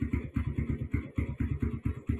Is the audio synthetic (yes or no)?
no